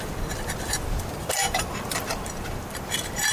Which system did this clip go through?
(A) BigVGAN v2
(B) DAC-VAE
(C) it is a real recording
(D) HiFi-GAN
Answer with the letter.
A